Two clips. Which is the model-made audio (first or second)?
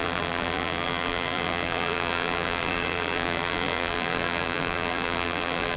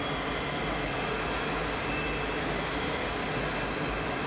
first